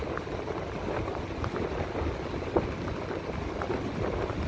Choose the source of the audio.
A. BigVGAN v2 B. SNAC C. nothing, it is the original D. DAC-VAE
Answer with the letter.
C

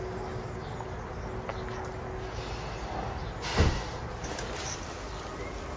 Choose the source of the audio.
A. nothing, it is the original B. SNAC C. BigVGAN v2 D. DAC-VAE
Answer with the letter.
A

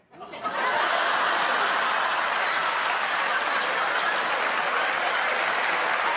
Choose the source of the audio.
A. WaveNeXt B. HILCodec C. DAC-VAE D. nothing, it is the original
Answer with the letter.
D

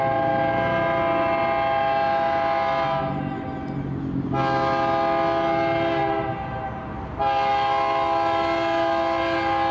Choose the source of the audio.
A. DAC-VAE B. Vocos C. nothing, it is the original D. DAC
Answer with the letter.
C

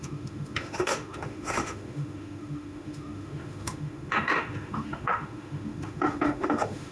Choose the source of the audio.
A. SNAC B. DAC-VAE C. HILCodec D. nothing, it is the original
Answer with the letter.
B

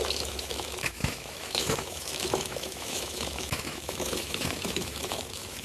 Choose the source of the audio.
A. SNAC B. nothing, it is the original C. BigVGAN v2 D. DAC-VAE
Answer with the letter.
D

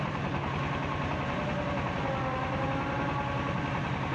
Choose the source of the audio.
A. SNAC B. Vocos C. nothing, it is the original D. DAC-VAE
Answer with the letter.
C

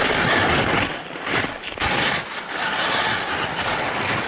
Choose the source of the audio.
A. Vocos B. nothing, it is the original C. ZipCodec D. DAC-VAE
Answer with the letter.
B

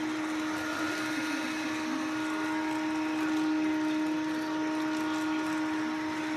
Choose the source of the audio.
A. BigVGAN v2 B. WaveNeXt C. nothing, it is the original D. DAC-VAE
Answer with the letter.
C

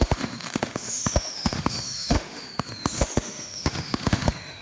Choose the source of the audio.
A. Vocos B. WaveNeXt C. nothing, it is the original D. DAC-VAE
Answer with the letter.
D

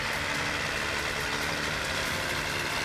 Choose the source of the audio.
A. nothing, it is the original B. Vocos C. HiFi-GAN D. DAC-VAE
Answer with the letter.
A